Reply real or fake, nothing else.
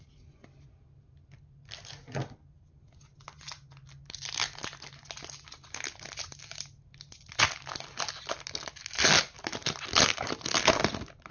real